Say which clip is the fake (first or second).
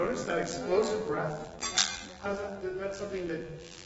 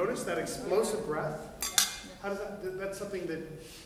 first